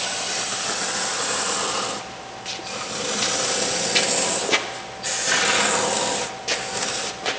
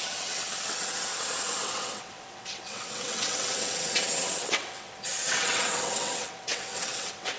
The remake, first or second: second